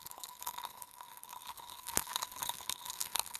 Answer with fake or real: fake